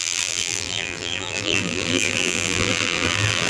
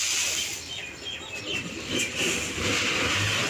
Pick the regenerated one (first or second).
first